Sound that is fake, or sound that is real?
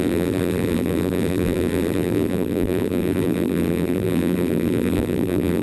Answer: fake